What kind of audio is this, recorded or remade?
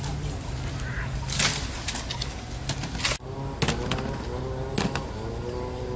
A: recorded